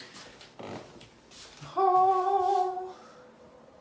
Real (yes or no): yes